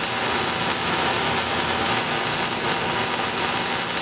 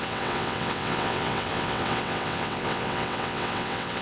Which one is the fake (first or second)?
second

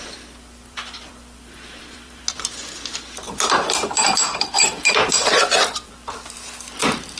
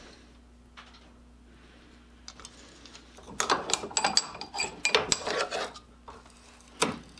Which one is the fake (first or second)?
first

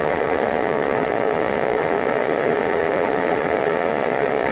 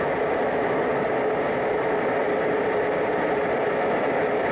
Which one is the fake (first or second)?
first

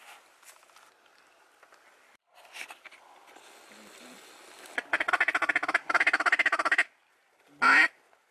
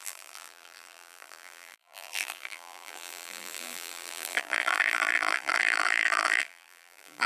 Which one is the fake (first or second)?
second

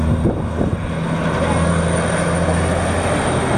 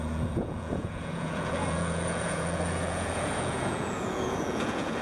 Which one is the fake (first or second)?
second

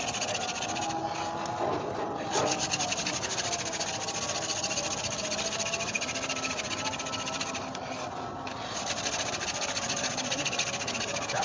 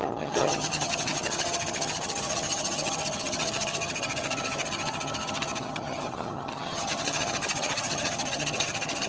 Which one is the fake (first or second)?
second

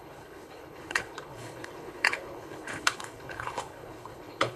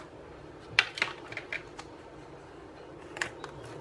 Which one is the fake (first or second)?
first